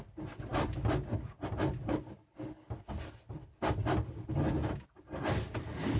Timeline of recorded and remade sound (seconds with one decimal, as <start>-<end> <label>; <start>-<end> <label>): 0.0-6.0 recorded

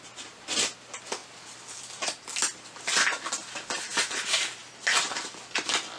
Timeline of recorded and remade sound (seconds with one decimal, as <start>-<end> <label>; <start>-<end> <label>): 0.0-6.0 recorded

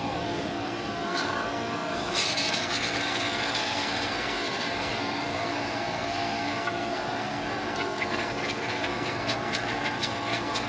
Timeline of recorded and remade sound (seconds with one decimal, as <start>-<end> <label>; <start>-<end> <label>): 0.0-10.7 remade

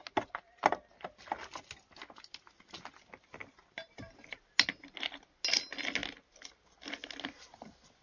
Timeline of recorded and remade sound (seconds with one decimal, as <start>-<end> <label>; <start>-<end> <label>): 0.0-8.0 recorded